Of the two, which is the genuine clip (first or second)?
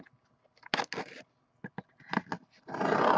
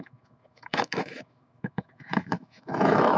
first